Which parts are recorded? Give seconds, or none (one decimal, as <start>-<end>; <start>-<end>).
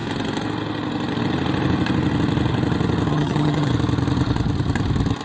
0.0-3.1; 3.7-5.2